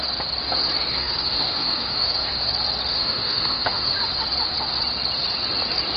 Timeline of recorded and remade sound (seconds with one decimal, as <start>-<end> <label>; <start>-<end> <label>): 0.0-0.9 recorded; 0.9-2.4 remade; 2.4-2.9 recorded; 2.9-4.1 remade; 4.1-6.0 recorded